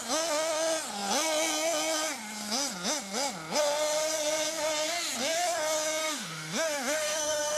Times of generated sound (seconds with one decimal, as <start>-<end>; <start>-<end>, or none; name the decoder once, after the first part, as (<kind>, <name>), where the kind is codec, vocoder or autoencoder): 6.0-7.6 (autoencoder, DAC-VAE)